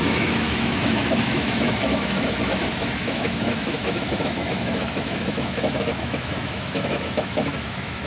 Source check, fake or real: fake